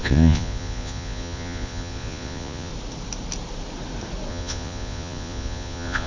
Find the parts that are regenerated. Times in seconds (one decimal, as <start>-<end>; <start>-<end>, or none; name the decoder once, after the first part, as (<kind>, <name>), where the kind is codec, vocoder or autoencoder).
0.0-2.7 (vocoder, Vocos); 4.3-6.1